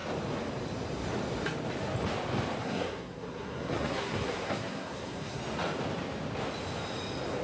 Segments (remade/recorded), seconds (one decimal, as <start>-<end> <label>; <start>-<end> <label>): 0.0-2.6 recorded; 2.6-5.4 remade; 5.4-7.4 recorded